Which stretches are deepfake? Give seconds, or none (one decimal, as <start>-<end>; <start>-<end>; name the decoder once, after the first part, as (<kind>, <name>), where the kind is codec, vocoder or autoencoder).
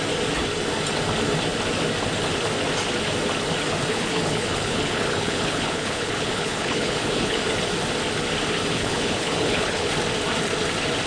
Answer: 3.9-7.4 (codec, HILCodec); 8.7-9.9